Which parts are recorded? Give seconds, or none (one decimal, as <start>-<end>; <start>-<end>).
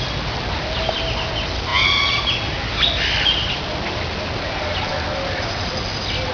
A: 0.0-6.3